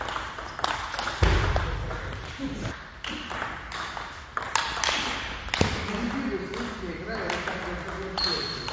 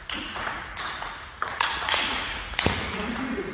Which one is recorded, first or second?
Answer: first